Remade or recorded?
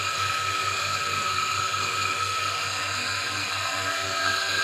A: remade